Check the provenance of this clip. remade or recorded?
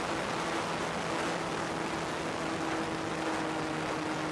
recorded